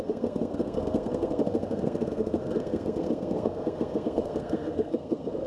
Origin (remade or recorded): remade